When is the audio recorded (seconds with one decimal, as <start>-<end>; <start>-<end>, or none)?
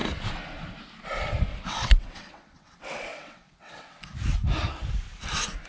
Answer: 0.0-1.5; 4.0-5.7